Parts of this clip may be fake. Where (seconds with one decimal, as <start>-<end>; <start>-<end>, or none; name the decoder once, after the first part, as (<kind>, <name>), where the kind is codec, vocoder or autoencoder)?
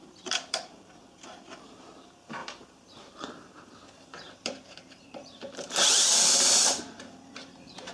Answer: 0.0-7.9 (vocoder, BigVGAN v2)